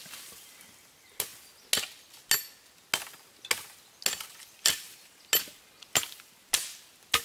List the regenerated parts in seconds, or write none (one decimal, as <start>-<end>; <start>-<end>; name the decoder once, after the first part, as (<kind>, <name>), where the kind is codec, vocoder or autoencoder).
none